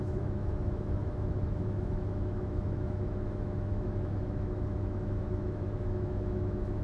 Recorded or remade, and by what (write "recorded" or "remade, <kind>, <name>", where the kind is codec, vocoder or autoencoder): remade, autoencoder, DAC-VAE